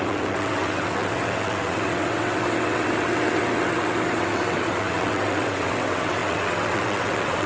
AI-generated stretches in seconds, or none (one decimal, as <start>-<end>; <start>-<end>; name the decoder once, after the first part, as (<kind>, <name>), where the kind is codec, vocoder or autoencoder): 0.0-7.5 (vocoder, WaveNeXt)

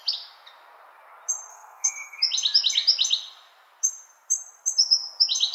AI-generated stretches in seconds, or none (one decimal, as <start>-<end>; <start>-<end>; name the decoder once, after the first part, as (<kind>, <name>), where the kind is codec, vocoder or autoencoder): 1.5-2.2 (codec, SNAC)

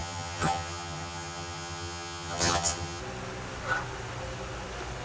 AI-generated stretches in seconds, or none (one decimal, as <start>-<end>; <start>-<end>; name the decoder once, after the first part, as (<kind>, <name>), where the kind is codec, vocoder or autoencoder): 0.0-3.0 (vocoder, HiFi-GAN)

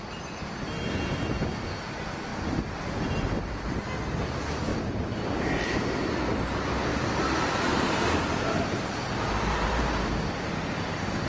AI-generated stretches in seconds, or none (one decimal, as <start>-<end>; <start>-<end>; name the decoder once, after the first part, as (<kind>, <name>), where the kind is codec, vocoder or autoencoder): 2.3-3.8 (vocoder, BigVGAN v2); 4.7-5.3; 6.9-10.1

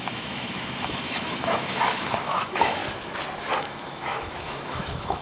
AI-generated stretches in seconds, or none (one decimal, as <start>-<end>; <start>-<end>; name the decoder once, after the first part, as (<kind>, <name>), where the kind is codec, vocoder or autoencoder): 0.0-2.8 (autoencoder, DAC-VAE); 3.6-5.2

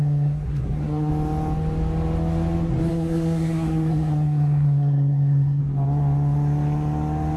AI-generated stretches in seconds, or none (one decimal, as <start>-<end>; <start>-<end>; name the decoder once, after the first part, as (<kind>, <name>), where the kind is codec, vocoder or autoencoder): 0.0-1.1 (codec, SNAC); 2.9-5.6

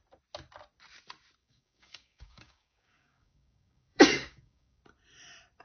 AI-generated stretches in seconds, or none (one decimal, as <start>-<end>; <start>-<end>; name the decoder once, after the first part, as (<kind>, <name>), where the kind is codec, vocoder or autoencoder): 1.4-4.8 (codec, DAC)